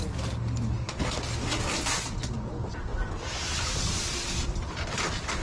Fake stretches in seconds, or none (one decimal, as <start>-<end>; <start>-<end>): none